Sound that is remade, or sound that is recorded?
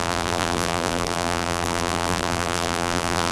remade